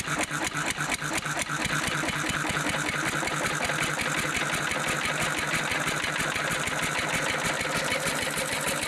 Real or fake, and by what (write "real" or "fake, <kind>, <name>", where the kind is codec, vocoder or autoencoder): real